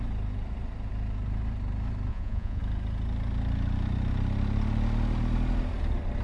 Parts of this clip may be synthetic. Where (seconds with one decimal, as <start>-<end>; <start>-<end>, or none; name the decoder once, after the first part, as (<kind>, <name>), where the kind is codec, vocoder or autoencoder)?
2.1-2.6 (vocoder, Vocos)